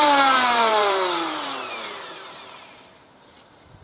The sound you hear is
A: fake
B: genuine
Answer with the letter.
A